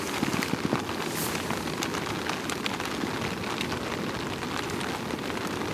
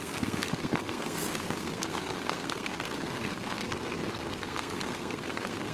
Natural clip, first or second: first